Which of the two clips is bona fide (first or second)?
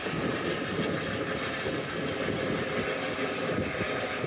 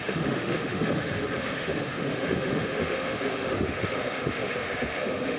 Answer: first